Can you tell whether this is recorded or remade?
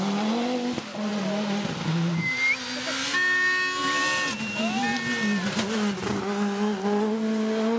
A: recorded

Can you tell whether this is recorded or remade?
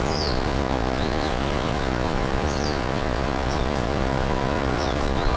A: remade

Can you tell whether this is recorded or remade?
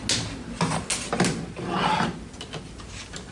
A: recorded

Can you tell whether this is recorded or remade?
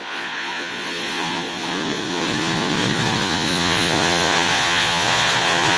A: remade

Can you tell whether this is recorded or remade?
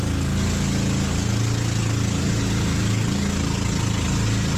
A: recorded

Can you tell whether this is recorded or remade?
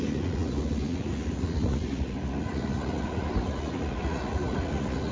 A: remade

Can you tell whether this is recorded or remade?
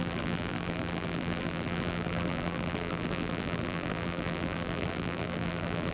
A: remade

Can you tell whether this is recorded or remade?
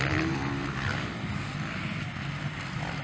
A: recorded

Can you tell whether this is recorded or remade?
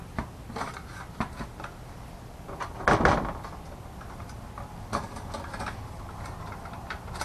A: recorded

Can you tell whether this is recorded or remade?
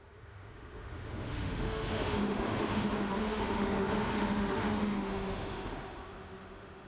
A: remade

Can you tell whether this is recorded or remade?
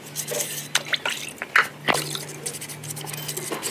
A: recorded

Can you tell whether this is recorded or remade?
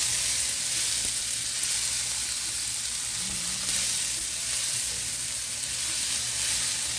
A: recorded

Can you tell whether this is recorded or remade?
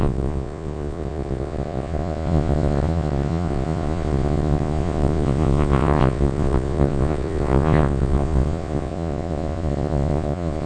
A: remade